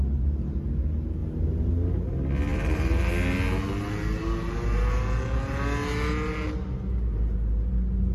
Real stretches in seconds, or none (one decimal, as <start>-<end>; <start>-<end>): 0.0-1.2; 1.7-2.5; 3.1-8.1